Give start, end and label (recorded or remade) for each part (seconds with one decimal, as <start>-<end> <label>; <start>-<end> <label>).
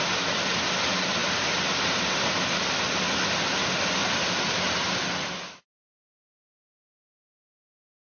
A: 0.0-1.2 recorded; 1.2-2.8 remade; 2.8-8.1 recorded